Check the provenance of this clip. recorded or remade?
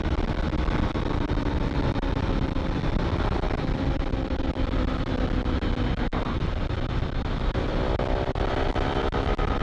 recorded